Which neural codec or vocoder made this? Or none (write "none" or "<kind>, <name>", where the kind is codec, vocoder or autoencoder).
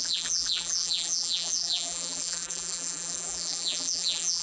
vocoder, BigVGAN v2